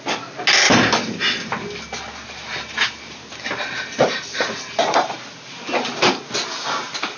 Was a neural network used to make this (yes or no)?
no